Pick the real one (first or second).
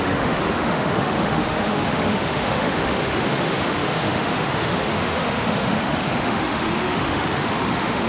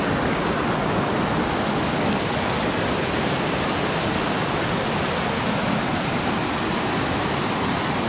second